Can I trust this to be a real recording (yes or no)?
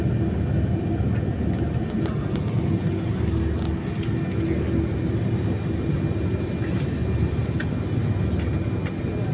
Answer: yes